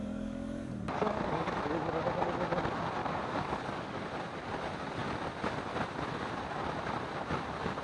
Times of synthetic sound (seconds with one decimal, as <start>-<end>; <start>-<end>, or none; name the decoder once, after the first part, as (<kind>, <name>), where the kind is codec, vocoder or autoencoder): 0.0-1.6 (codec, DAC); 3.0-4.0